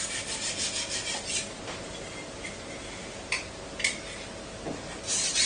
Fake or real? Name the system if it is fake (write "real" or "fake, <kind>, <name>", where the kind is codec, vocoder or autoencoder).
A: real